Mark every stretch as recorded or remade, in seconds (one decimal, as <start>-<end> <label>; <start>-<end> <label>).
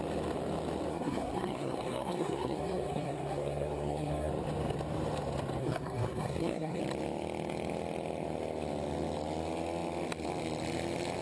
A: 0.0-0.9 recorded; 0.9-4.3 remade; 4.3-5.6 recorded; 5.6-6.8 remade; 6.8-11.2 recorded